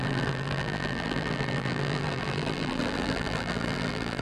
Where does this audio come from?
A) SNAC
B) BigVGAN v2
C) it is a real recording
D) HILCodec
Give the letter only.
B